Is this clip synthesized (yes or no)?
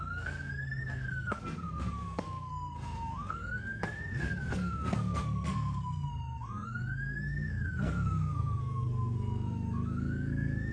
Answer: yes